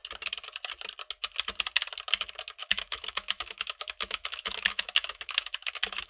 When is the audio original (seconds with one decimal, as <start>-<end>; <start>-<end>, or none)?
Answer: 0.0-2.6

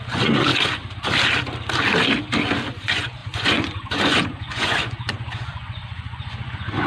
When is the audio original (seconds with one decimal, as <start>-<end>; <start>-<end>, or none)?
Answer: 0.5-2.7

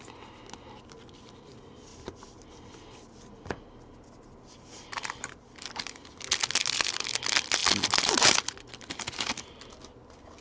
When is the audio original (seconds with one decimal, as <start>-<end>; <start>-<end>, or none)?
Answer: 0.0-10.4

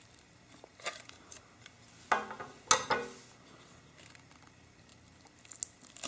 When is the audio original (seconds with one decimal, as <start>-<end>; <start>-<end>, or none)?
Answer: 0.0-0.7; 1.4-6.1

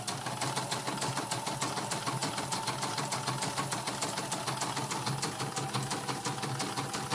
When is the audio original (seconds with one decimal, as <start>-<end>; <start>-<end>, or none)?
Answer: 0.0-7.1

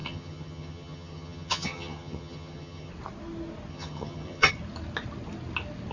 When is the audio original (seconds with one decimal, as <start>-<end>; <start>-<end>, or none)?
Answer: 2.9-3.7; 4.5-5.9